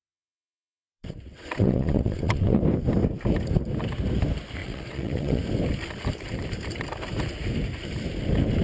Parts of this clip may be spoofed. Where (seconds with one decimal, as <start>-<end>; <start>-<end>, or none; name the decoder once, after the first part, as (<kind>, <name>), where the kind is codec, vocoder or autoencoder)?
0.0-2.6 (vocoder, WaveNeXt); 4.6-5.4